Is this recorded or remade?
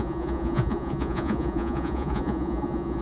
remade